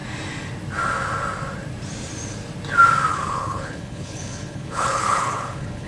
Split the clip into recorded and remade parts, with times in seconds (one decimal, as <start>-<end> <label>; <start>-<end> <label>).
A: 0.0-3.1 recorded; 3.1-5.9 remade